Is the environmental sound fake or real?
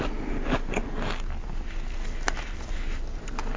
real